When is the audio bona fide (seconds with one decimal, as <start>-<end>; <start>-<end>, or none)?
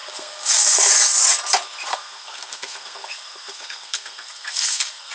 0.9-1.9